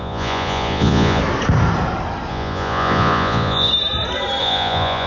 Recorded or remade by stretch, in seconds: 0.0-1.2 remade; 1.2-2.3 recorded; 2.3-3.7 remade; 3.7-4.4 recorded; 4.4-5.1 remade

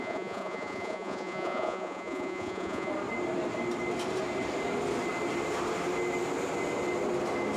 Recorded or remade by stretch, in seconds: 0.0-2.9 remade; 2.9-7.6 recorded

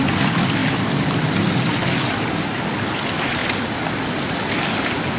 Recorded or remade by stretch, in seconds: 0.0-5.2 recorded